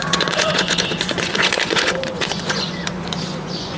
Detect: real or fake fake